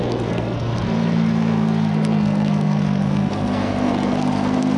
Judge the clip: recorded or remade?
remade